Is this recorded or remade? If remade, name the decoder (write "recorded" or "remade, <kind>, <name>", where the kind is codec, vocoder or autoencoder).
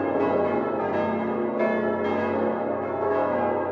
recorded